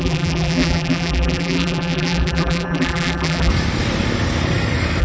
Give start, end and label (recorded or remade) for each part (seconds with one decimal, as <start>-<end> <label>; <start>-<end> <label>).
0.0-3.5 remade; 3.5-5.0 recorded